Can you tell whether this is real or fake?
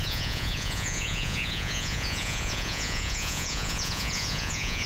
fake